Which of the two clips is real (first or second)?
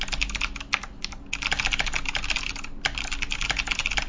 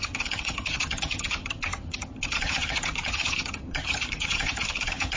first